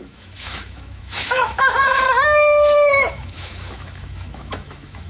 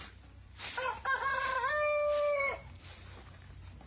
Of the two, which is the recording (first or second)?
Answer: second